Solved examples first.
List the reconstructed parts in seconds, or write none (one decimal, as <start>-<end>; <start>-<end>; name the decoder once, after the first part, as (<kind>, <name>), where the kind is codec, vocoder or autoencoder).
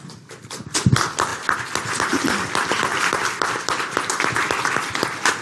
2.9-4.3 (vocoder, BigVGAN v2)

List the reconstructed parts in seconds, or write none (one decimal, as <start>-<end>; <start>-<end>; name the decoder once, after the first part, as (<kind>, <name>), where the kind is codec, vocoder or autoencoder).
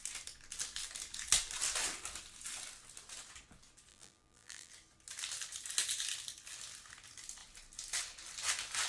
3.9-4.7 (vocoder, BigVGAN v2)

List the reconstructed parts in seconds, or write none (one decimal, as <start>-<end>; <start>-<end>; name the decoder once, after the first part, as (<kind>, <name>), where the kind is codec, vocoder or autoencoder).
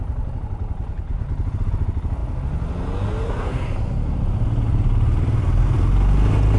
none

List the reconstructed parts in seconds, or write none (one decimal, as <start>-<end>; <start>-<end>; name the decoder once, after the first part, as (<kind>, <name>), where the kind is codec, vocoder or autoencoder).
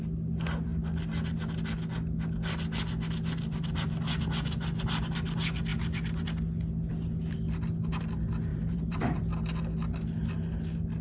8.5-9.2 (vocoder, BigVGAN v2)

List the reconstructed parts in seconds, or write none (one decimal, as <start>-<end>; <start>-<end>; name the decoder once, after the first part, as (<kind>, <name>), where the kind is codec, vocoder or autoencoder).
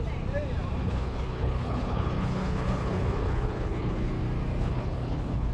0.8-4.1 (codec, HILCodec); 4.6-5.5